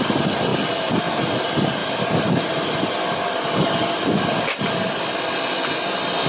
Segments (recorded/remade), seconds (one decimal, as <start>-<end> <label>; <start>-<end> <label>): 0.0-6.3 recorded